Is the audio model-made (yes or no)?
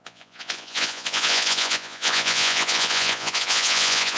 yes